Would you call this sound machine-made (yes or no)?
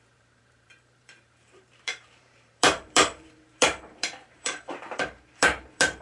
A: yes